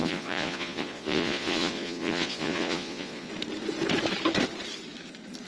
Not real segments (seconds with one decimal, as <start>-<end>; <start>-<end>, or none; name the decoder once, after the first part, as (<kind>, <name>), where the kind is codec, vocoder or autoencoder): 0.0-3.3 (vocoder, Vocos)